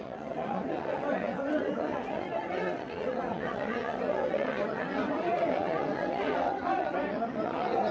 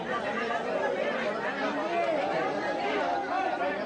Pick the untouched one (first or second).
second